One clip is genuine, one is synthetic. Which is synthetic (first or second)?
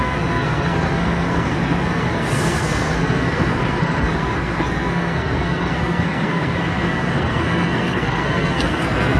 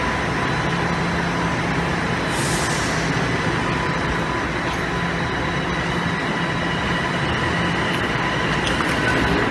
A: first